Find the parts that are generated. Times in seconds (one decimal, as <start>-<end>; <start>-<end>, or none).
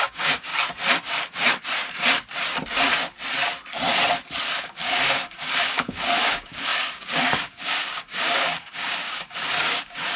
0.0-0.5; 4.6-10.2